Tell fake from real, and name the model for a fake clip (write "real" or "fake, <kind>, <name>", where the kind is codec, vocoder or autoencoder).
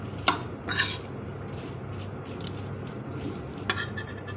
real